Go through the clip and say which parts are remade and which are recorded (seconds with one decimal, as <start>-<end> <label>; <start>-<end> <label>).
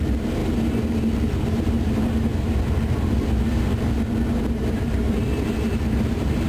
0.0-0.4 remade; 0.4-1.5 recorded; 1.5-2.3 remade; 2.3-4.4 recorded; 4.4-6.5 remade